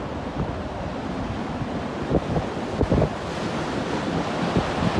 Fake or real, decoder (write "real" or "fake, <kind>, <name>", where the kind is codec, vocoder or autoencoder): real